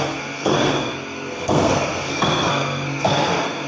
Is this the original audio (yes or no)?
no